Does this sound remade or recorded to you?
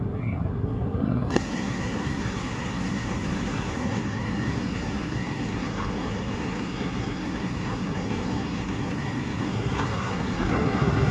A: remade